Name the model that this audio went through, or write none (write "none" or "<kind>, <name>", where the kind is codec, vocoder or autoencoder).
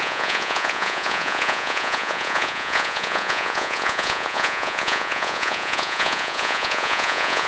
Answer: vocoder, Vocos